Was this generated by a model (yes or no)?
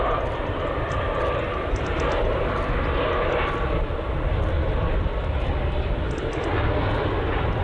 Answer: no